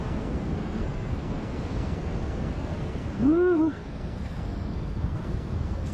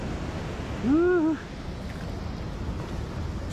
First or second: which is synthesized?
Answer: first